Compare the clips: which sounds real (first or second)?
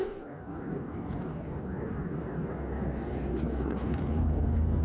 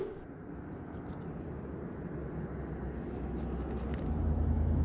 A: second